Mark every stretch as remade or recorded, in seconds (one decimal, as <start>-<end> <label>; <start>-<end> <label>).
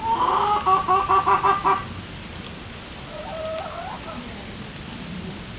0.0-5.6 recorded